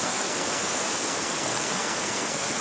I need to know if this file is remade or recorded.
remade